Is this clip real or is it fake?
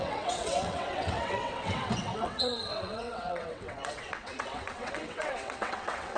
fake